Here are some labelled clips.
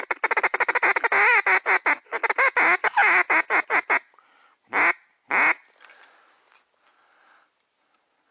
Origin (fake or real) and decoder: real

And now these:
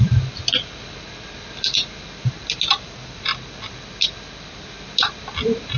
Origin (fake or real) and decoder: real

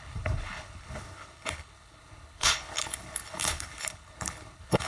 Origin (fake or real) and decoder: fake, codec, HILCodec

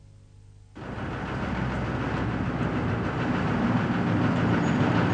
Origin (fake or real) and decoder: real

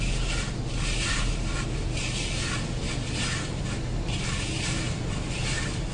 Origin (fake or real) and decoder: real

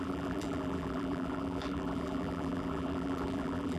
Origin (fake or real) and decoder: fake, vocoder, BigVGAN v2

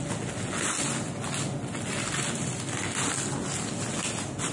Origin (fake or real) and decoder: real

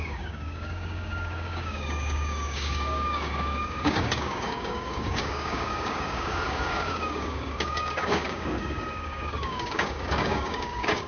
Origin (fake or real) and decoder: fake, codec, DAC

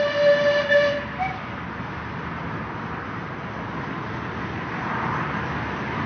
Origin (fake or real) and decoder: real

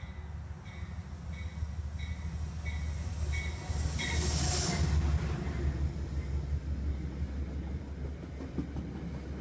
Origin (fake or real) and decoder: real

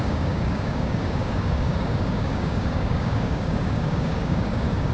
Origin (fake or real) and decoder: fake, codec, DAC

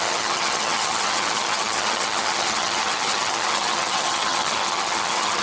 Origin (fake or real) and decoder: fake, vocoder, HiFi-GAN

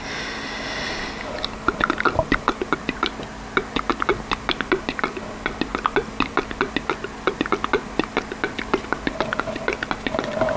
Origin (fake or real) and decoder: real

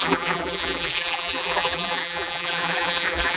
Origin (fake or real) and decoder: fake, vocoder, BigVGAN v2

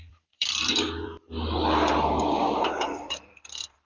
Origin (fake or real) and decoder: fake, vocoder, BigVGAN v2